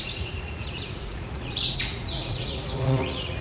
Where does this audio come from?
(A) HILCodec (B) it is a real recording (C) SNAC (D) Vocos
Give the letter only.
D